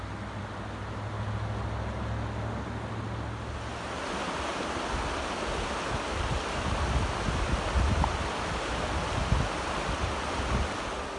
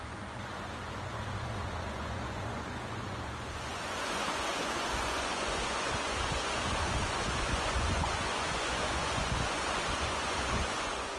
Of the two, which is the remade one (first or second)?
second